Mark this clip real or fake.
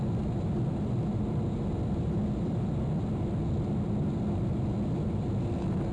real